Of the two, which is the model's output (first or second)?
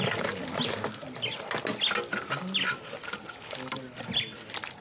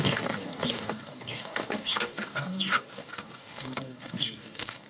second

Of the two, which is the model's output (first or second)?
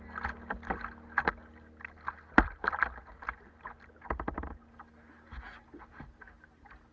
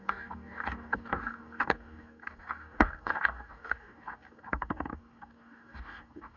second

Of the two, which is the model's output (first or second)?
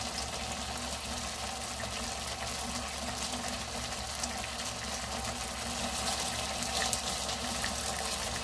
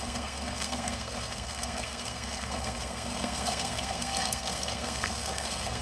second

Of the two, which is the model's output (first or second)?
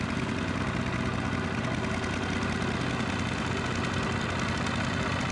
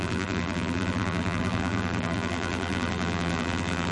second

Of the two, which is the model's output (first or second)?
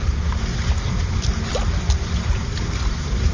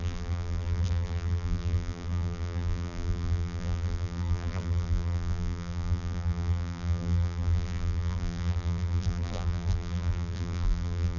second